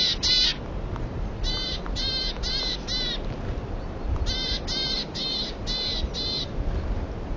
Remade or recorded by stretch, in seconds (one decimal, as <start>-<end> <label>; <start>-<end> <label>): 0.0-7.4 recorded